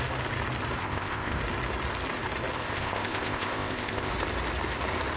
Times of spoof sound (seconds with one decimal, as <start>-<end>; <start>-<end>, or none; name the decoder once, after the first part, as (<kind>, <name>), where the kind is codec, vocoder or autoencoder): 0.8-1.4 (codec, ZipCodec); 2.6-4.1